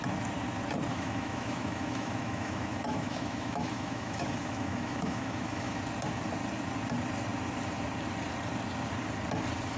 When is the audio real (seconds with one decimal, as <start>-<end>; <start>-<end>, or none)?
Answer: 0.0-0.9; 5.8-9.8